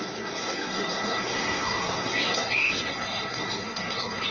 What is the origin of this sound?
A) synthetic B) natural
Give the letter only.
A